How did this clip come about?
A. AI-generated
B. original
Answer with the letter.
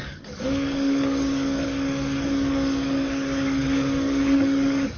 A